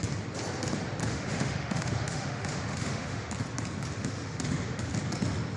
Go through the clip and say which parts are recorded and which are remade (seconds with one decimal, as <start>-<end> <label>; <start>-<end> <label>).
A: 0.0-1.0 recorded; 1.0-3.3 remade; 3.3-4.0 recorded; 4.0-4.9 remade; 4.9-5.6 recorded